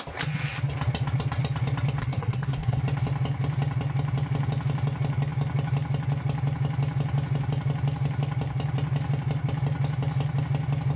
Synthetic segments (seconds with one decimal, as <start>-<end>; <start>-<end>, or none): 2.0-2.8